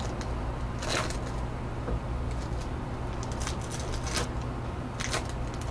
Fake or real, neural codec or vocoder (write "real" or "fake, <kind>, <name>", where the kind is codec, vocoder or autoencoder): real